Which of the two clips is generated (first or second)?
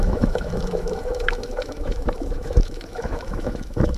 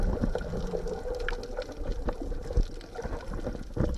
first